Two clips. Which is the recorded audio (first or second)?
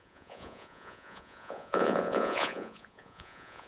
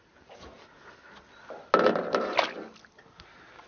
second